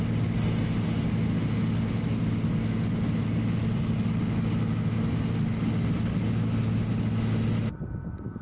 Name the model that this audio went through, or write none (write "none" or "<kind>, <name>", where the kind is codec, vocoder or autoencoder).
none